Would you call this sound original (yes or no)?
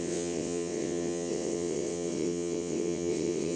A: no